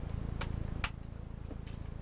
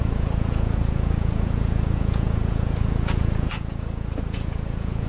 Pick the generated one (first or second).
second